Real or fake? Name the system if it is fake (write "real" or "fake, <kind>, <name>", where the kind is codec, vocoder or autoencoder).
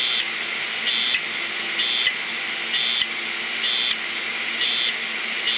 real